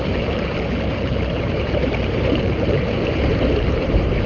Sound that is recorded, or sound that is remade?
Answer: remade